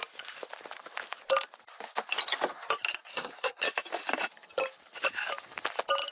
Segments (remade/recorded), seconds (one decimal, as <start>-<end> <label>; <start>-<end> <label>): 0.0-3.1 recorded; 3.1-3.6 remade; 3.6-6.1 recorded